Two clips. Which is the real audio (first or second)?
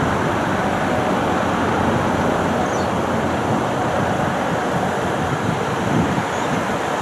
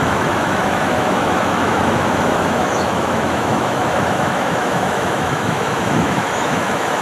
first